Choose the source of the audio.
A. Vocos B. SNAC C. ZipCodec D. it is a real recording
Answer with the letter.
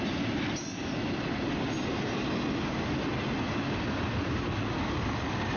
D